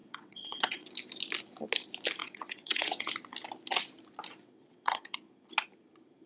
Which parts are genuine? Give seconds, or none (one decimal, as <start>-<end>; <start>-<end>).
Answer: 0.9-2.2; 3.1-4.4; 5.2-6.3